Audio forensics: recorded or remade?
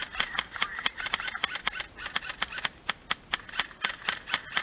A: recorded